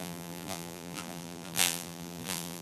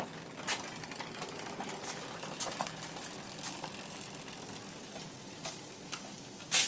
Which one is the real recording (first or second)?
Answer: second